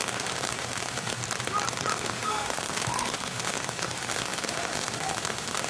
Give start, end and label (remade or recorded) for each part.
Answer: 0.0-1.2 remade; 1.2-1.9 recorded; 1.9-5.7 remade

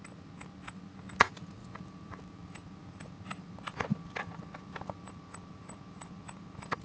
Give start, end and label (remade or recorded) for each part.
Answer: 0.0-1.6 recorded; 1.6-2.2 remade; 2.2-2.8 recorded; 2.8-6.8 remade